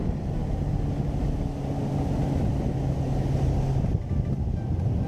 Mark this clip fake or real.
real